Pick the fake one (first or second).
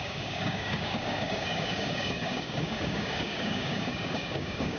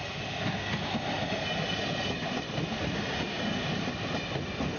first